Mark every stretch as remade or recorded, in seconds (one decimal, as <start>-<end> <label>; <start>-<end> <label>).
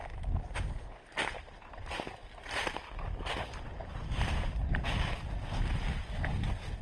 0.0-0.7 recorded; 0.7-6.8 remade